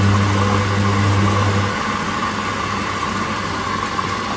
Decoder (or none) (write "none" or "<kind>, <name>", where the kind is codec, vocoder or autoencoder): none